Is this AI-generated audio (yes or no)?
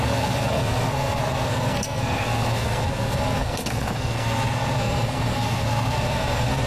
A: yes